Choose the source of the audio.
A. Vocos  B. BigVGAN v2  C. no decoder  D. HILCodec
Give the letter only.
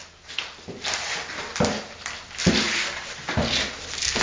C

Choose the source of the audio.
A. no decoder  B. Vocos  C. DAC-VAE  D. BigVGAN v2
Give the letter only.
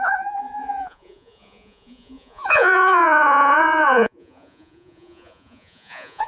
B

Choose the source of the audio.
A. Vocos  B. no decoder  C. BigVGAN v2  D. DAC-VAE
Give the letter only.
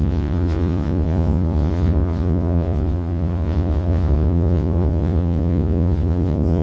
A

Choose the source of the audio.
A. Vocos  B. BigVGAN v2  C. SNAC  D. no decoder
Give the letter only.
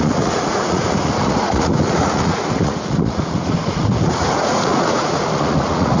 A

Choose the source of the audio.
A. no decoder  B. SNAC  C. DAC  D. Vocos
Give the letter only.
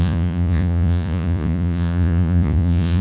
D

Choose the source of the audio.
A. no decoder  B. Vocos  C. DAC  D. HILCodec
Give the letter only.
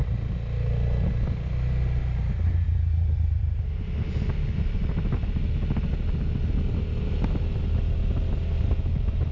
A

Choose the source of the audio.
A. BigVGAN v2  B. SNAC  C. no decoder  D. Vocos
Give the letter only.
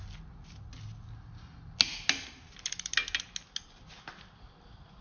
C